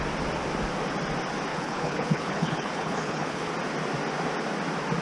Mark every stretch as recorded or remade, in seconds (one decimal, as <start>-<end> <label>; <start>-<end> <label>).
0.0-1.5 recorded; 1.5-3.5 remade; 3.5-5.0 recorded